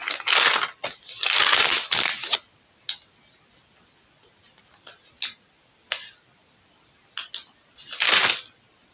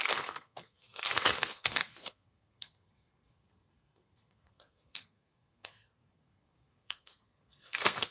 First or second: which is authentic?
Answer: first